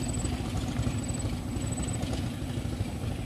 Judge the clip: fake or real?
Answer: real